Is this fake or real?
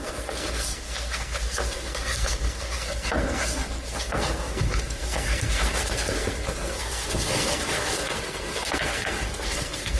fake